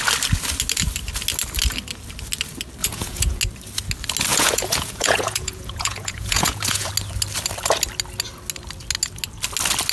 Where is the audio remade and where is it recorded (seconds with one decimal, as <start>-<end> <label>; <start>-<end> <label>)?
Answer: 0.0-2.8 recorded; 2.8-3.4 remade; 3.4-4.3 recorded; 4.3-6.9 remade; 6.9-9.9 recorded